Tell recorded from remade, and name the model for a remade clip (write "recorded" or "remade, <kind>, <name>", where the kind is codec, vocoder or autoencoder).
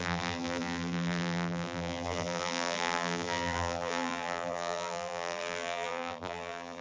remade, vocoder, BigVGAN v2